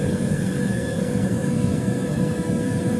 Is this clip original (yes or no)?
no